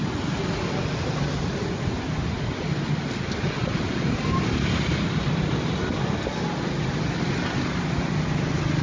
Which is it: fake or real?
real